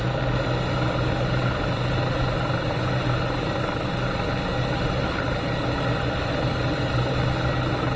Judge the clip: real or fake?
real